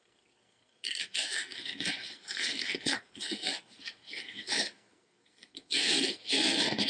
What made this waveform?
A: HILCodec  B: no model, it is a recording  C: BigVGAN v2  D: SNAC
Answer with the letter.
D